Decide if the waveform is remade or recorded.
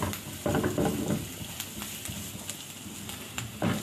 recorded